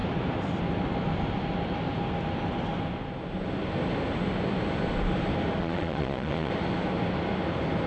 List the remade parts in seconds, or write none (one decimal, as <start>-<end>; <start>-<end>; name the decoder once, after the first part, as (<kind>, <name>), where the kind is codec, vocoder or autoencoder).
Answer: 5.6-6.5 (vocoder, Vocos)